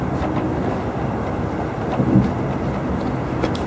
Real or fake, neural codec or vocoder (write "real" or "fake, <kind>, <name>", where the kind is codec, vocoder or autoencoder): real